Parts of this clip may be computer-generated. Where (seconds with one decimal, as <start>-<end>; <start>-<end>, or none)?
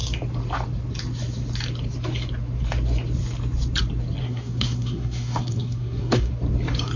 4.2-6.3